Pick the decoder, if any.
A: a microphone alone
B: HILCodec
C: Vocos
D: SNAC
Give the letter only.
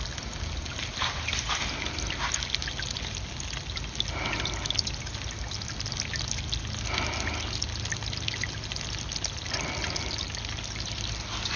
A